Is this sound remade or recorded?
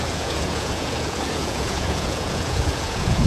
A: remade